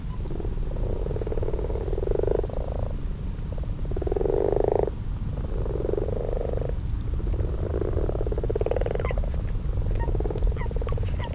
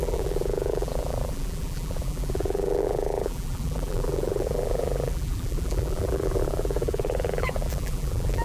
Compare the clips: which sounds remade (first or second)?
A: second